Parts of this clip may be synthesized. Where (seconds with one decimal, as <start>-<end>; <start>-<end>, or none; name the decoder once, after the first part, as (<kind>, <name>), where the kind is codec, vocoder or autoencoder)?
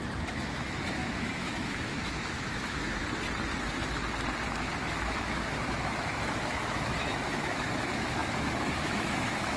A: 0.0-3.0 (autoencoder, DAC-VAE); 4.8-9.6